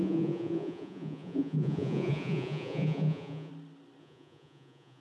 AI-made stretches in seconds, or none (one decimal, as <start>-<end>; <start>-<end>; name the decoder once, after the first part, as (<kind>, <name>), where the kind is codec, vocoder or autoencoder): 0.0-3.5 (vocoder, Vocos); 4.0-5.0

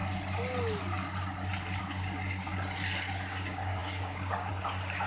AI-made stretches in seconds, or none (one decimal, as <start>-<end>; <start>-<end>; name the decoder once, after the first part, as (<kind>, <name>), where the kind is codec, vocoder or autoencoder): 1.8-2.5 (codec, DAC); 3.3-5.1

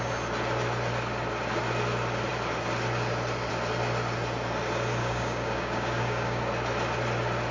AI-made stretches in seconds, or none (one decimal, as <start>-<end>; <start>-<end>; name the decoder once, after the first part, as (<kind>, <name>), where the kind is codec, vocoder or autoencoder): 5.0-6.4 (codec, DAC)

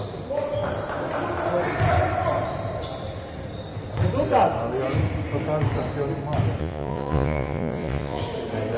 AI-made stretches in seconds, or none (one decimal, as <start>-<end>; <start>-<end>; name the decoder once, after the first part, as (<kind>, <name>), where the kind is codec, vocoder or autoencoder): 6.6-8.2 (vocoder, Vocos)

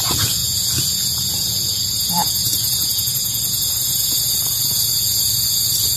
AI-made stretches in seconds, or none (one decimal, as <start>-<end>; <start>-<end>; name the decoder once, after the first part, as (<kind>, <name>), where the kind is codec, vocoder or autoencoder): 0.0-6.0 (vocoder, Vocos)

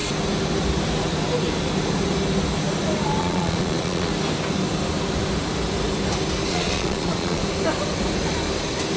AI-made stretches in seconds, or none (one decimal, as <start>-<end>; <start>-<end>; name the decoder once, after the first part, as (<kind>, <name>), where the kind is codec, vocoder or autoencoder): 3.2-4.1 (vocoder, Vocos); 6.5-7.4